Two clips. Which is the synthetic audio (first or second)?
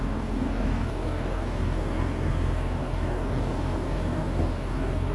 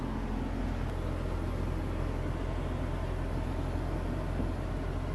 first